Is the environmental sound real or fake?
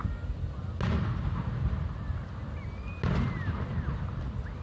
real